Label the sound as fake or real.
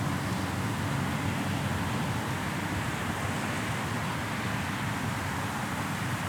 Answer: real